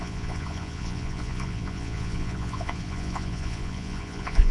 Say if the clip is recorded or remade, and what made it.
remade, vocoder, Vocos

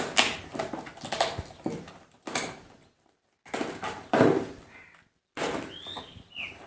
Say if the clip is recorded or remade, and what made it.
recorded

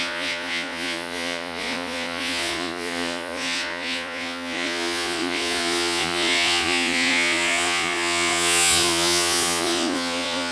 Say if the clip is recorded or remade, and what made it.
remade, vocoder, Vocos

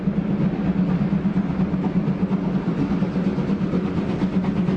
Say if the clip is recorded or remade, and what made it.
recorded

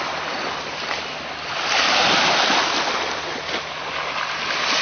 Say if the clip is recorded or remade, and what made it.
recorded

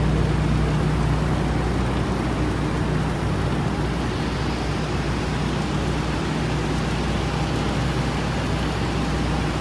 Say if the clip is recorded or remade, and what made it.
recorded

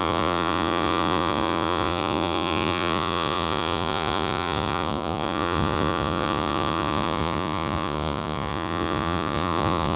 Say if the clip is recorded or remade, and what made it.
remade, vocoder, Vocos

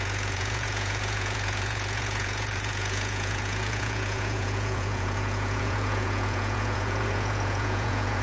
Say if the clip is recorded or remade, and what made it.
remade, vocoder, Vocos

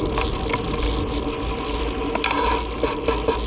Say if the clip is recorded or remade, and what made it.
recorded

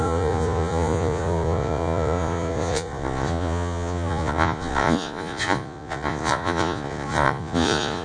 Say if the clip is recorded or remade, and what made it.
remade, vocoder, Vocos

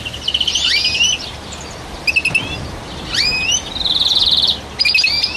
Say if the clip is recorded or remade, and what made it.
recorded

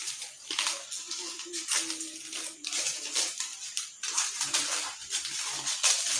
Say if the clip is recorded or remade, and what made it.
recorded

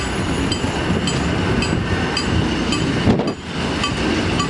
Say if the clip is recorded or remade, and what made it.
recorded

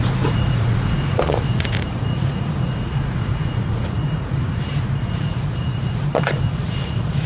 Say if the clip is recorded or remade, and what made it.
remade, vocoder, Vocos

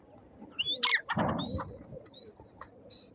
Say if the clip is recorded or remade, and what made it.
recorded